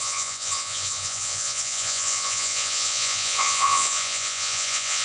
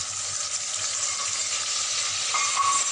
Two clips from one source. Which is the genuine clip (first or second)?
second